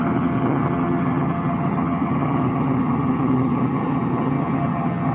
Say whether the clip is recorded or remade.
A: remade